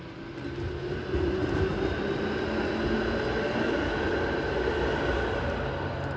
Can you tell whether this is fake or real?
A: real